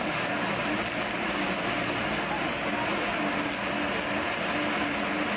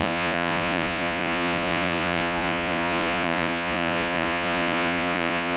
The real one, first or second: first